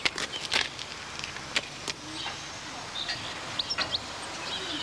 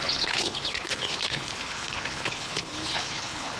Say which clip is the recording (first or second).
first